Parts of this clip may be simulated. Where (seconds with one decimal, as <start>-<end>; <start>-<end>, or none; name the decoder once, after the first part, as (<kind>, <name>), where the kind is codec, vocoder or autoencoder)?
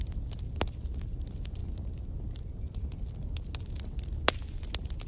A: none